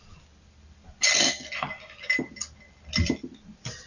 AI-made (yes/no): no